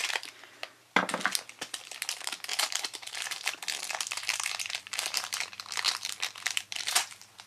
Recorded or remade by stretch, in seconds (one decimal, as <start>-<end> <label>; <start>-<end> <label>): 0.0-2.1 recorded; 2.1-7.5 remade